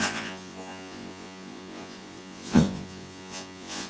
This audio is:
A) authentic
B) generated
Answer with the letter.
B